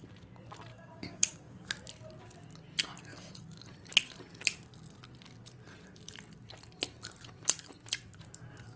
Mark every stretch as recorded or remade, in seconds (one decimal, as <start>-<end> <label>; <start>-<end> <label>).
0.0-0.7 recorded; 0.7-1.7 remade; 1.7-8.8 recorded